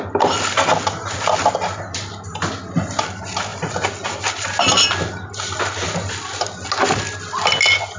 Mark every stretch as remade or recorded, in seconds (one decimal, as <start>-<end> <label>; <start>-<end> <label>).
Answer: 0.0-8.0 recorded

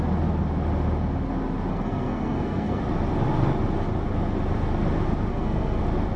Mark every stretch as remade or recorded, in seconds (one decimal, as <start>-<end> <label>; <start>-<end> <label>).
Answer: 0.0-1.7 recorded; 1.7-2.8 remade; 2.8-5.3 recorded; 5.3-5.8 remade; 5.8-6.2 recorded

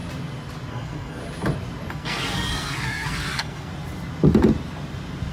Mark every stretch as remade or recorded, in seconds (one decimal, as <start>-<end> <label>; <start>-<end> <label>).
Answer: 0.0-0.7 recorded; 0.7-1.2 remade; 1.2-1.9 recorded; 1.9-3.7 remade; 3.7-5.3 recorded